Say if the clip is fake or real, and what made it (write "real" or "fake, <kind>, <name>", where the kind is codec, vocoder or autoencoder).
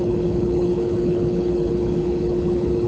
fake, codec, HILCodec